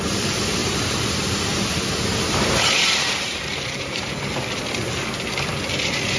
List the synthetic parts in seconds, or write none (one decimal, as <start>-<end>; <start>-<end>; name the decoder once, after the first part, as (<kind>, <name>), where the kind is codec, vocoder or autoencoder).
0.6-4.2 (vocoder, BigVGAN v2)